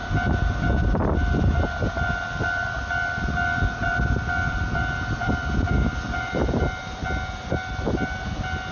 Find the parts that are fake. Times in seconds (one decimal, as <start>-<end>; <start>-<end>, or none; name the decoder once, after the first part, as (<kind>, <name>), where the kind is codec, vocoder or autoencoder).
0.0-1.6 (vocoder, BigVGAN v2); 2.6-6.8